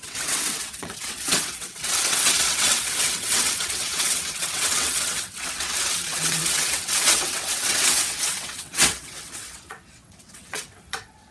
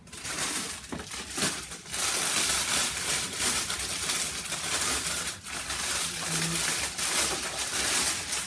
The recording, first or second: second